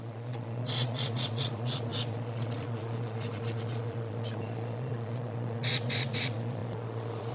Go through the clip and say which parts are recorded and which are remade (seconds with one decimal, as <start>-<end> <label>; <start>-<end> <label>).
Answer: 0.0-7.3 remade